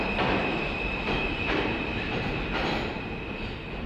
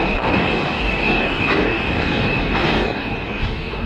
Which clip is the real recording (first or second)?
first